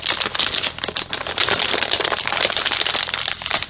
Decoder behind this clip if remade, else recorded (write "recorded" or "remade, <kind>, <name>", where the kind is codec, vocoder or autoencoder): recorded